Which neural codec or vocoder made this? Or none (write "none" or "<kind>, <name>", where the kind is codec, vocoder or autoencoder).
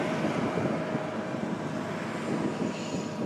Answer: none